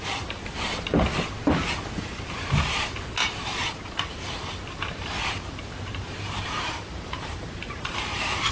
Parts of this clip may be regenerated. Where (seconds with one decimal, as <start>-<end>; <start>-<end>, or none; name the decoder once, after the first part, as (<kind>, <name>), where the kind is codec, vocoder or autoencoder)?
3.2-8.5 (vocoder, BigVGAN v2)